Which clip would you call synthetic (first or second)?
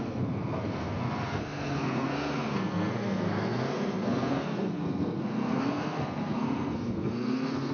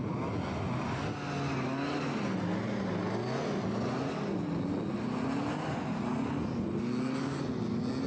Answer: first